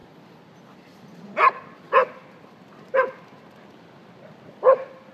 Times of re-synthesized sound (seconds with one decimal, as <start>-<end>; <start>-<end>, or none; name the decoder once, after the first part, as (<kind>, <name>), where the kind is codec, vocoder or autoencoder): none